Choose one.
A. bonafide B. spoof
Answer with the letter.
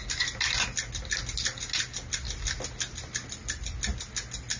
A